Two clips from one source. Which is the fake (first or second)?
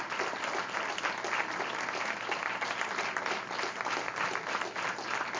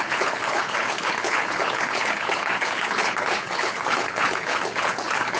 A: second